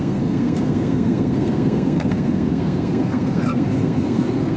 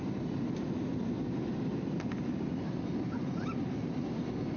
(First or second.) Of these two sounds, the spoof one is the first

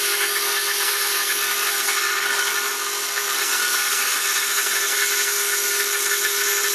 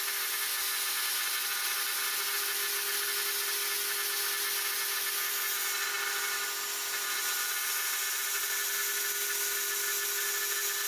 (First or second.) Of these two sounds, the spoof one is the first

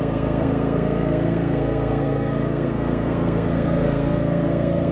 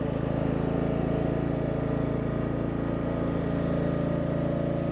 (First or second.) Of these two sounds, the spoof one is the first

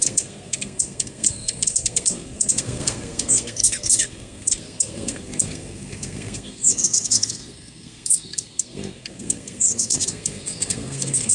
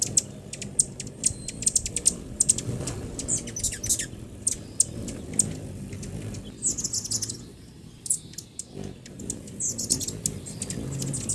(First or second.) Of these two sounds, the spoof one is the first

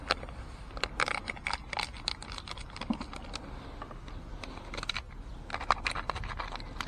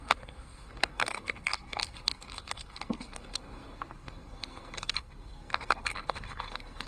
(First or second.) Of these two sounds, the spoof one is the second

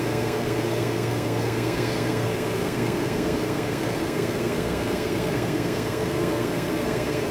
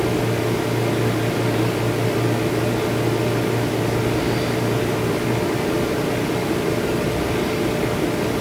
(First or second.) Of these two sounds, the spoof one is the first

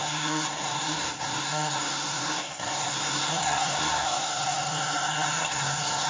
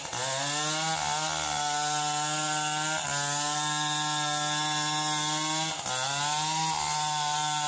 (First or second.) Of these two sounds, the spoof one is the first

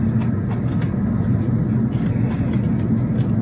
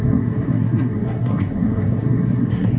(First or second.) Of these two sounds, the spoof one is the second